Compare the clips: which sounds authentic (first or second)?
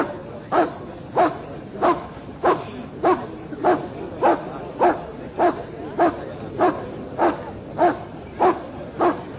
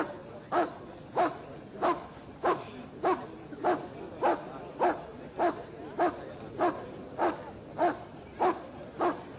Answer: second